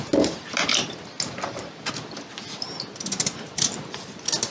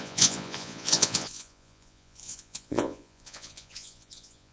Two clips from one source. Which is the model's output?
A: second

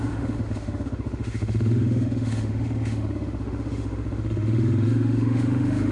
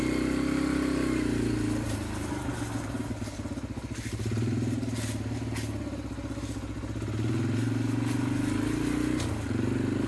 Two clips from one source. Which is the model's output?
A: first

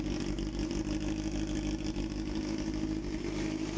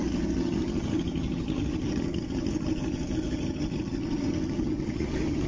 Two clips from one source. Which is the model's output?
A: second